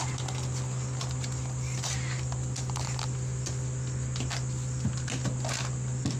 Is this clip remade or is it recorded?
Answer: recorded